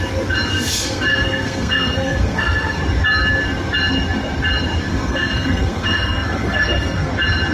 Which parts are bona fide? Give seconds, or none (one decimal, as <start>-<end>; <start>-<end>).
0.0-0.5; 2.8-4.9; 7.1-7.5